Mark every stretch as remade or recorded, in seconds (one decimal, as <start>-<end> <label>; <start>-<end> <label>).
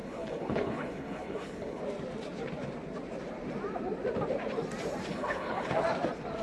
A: 0.0-1.8 remade; 1.8-5.1 recorded; 5.1-5.7 remade; 5.7-6.4 recorded